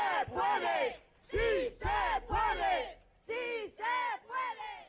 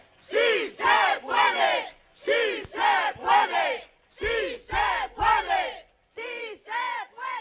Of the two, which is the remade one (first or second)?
second